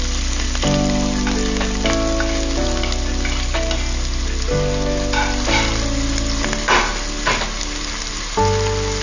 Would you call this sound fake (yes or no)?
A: no